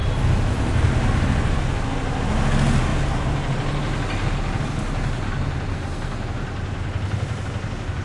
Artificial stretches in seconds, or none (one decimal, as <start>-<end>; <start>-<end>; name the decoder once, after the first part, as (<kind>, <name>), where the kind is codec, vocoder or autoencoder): 5.7-6.2 (codec, SNAC)